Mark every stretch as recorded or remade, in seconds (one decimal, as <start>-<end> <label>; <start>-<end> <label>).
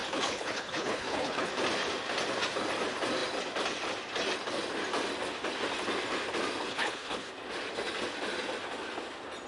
0.0-1.5 remade; 1.5-6.7 recorded; 6.7-7.3 remade; 7.3-9.5 recorded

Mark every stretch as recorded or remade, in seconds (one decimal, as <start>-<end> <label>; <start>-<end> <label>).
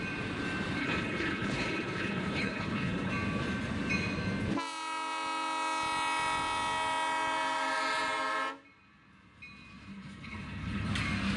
0.0-0.8 recorded; 0.8-3.1 remade; 3.1-9.9 recorded; 9.9-10.9 remade; 10.9-11.4 recorded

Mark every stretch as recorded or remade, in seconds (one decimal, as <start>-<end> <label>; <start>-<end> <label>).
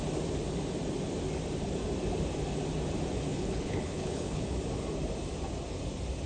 0.0-3.3 recorded; 3.3-4.6 remade; 4.6-6.3 recorded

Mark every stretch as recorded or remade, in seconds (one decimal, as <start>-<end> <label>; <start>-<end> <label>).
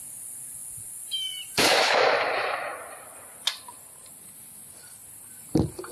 0.0-5.9 recorded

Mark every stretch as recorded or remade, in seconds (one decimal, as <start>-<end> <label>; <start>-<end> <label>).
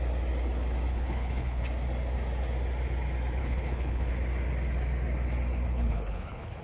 0.0-0.9 recorded; 0.9-1.6 remade; 1.6-3.4 recorded; 3.4-4.1 remade; 4.1-5.7 recorded; 5.7-6.6 remade